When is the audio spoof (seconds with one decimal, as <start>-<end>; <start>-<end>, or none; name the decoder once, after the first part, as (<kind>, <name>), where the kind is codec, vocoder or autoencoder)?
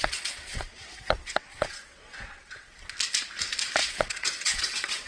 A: 0.0-2.7 (vocoder, WaveNeXt); 3.8-5.1